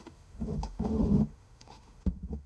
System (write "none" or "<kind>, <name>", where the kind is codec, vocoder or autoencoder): autoencoder, DAC-VAE